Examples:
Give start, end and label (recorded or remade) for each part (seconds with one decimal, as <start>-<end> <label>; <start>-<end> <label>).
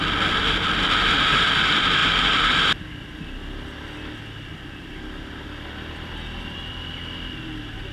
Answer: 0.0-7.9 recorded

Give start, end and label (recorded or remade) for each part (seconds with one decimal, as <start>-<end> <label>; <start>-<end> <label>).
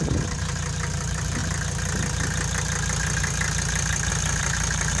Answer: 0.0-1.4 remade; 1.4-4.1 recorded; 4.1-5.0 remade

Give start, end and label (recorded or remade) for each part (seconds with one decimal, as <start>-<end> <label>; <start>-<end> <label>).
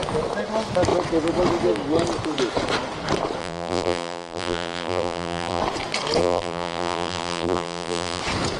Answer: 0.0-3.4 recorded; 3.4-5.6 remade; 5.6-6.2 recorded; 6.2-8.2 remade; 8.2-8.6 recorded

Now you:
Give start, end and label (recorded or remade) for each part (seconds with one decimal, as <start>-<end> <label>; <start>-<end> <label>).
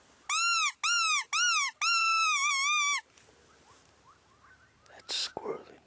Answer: 0.0-2.0 recorded; 2.0-2.5 remade; 2.5-5.9 recorded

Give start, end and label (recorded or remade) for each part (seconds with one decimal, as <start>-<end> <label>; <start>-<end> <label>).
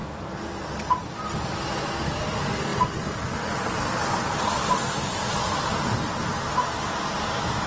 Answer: 0.0-7.7 recorded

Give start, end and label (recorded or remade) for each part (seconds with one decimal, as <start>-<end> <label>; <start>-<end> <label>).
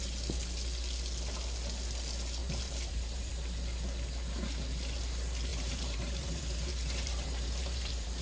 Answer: 0.0-2.4 recorded; 2.4-3.3 remade; 3.3-5.5 recorded; 5.5-8.2 remade